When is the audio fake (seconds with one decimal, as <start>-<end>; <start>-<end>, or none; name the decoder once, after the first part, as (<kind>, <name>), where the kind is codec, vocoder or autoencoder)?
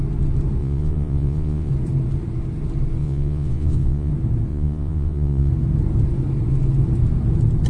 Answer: 0.6-1.7 (vocoder, Vocos); 3.0-4.1; 4.5-5.5